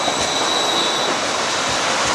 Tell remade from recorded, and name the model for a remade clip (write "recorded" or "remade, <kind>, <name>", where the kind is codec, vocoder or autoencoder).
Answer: recorded